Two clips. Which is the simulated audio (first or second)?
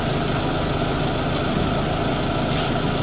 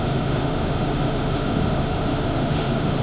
second